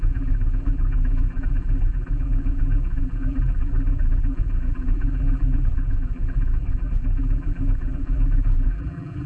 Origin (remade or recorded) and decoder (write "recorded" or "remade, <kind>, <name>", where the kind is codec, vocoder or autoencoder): remade, vocoder, BigVGAN v2